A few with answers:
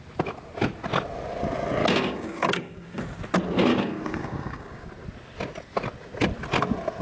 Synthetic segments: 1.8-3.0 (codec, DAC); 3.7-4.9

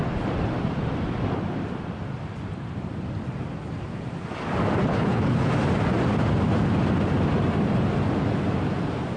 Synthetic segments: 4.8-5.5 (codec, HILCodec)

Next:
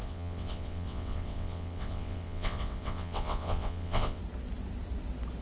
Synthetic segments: 0.0-4.2 (vocoder, WaveNeXt)

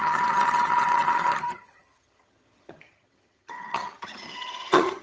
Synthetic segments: 0.0-5.0 (vocoder, HiFi-GAN)

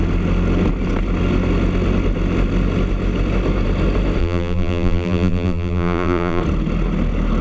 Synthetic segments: 4.2-6.4 (vocoder, BigVGAN v2)

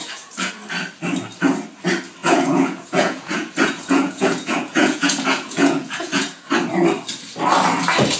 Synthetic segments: 0.0-0.5 (vocoder, Vocos); 2.2-6.5

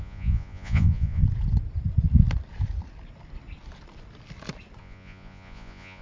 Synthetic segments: 0.0-1.2 (vocoder, Vocos); 4.8-6.0